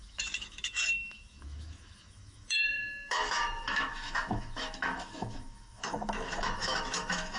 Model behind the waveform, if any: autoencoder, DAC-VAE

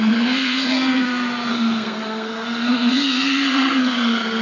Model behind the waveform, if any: codec, SNAC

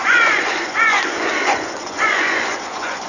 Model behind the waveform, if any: vocoder, Vocos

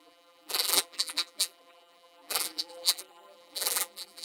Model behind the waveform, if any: vocoder, BigVGAN v2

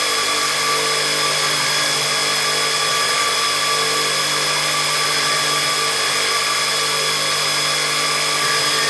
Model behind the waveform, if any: none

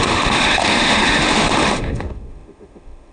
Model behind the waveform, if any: autoencoder, DAC-VAE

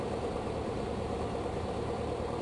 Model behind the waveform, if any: vocoder, BigVGAN v2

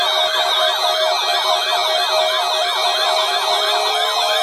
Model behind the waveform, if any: none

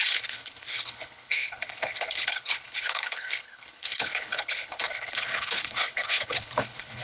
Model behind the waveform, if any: codec, HILCodec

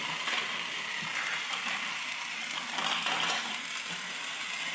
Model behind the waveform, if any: none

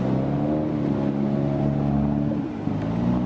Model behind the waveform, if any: none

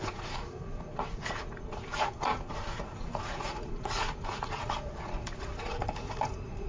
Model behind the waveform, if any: vocoder, Vocos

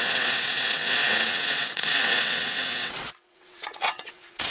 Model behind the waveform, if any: vocoder, WaveNeXt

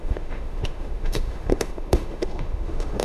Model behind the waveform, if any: autoencoder, DAC-VAE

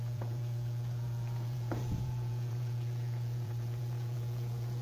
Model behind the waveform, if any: vocoder, Vocos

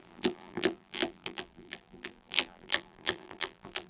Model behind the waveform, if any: vocoder, BigVGAN v2